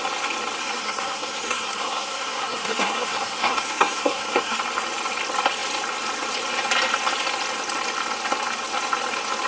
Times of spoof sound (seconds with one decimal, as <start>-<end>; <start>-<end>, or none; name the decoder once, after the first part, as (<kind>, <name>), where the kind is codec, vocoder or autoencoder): 0.6-4.6 (codec, SNAC)